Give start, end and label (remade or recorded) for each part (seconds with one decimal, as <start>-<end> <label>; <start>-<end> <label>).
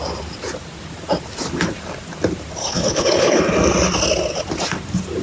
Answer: 0.0-2.6 recorded; 2.6-3.4 remade; 3.4-5.2 recorded